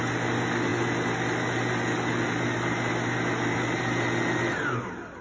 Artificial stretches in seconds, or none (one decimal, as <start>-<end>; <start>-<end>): none